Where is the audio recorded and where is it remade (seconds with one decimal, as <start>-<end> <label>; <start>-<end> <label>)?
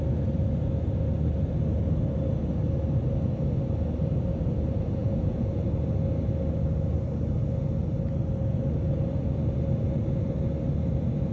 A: 0.0-5.0 recorded; 5.0-5.6 remade; 5.6-11.3 recorded